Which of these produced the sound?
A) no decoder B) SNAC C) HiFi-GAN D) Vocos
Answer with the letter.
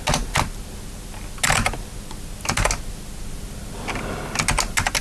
A